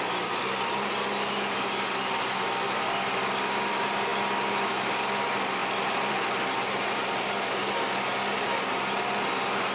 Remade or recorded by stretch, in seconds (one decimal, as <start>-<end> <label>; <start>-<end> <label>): 0.0-9.7 recorded